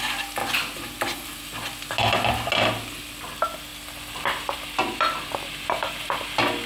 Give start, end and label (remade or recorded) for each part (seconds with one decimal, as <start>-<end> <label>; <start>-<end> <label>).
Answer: 0.0-6.7 recorded